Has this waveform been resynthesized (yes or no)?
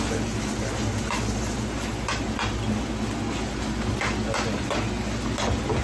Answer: no